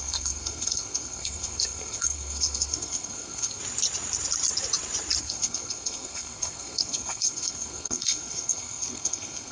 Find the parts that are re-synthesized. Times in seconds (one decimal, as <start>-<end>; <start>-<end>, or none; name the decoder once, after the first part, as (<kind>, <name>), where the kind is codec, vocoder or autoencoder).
0.0-3.6 (codec, SNAC); 5.2-9.5